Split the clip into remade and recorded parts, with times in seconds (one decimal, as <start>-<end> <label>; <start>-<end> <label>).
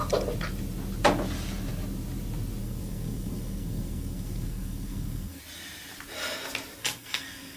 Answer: 0.0-2.6 recorded; 2.6-5.4 remade; 5.4-6.8 recorded; 6.8-7.6 remade